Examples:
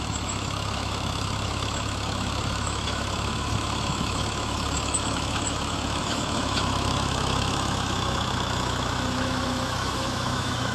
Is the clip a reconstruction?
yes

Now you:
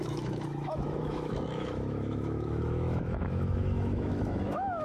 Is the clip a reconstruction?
yes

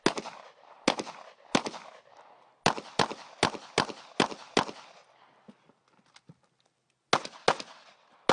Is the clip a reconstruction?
no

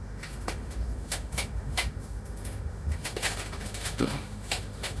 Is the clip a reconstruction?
yes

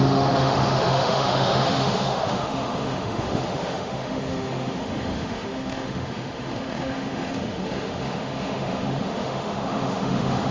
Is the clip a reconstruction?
yes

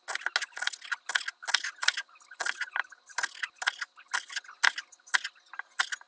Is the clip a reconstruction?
no